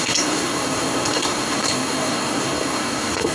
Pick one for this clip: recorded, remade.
remade